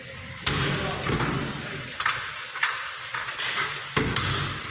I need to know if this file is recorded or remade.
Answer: recorded